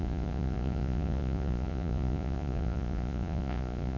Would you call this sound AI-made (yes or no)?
yes